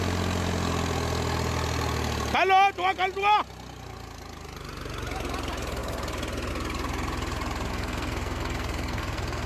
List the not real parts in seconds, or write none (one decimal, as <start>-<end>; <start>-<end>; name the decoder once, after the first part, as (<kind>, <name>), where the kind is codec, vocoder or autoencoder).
7.7-9.5 (codec, SNAC)